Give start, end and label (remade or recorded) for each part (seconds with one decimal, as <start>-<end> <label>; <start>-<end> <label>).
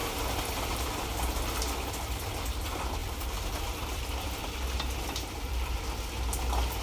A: 0.0-3.0 recorded; 3.0-5.7 remade; 5.7-6.8 recorded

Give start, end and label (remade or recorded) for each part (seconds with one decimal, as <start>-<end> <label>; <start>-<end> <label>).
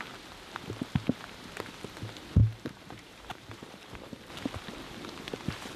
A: 0.0-2.4 recorded; 2.4-4.3 remade; 4.3-5.8 recorded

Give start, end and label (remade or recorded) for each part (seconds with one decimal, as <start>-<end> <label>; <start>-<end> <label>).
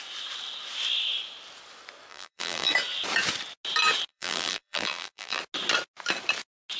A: 0.0-2.1 recorded; 2.1-2.7 remade; 2.7-4.1 recorded; 4.1-5.4 remade; 5.4-6.8 recorded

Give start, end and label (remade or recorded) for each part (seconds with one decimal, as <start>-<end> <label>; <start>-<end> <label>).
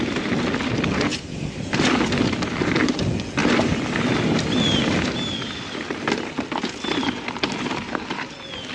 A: 0.0-1.1 recorded; 1.1-1.9 remade; 1.9-8.7 recorded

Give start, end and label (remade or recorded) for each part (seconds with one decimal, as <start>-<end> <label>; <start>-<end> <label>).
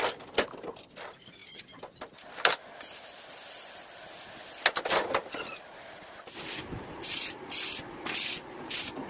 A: 0.0-1.4 recorded; 1.4-2.5 remade; 2.5-5.2 recorded; 5.2-7.4 remade; 7.4-9.1 recorded